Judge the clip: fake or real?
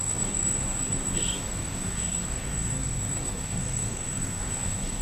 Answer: fake